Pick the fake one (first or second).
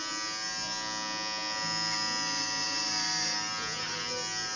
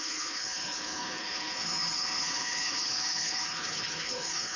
second